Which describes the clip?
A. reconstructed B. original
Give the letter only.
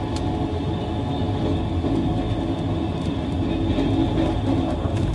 B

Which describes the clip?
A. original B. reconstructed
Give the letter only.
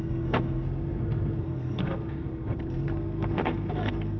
B